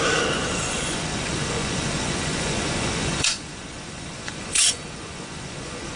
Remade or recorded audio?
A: remade